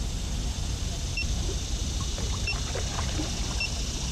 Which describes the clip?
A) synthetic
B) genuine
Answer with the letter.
B